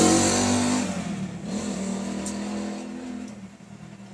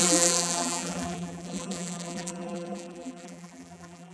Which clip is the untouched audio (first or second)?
first